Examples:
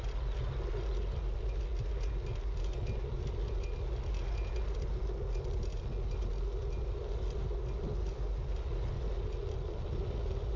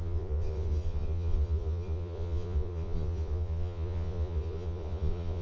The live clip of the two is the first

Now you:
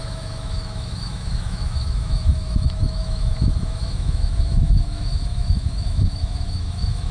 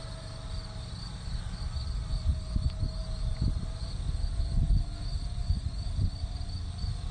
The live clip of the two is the second